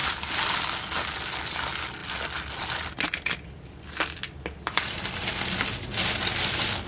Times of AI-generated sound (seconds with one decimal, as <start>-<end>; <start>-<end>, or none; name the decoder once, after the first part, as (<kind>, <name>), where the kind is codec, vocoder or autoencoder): none